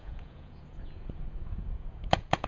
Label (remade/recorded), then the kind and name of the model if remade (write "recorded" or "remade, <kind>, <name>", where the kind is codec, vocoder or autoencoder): remade, vocoder, Vocos